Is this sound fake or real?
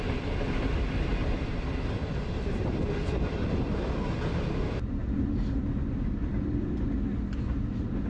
real